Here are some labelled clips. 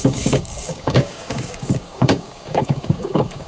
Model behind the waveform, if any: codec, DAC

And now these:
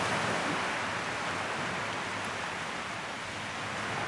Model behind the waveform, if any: none